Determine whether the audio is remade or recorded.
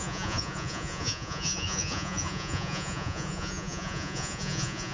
remade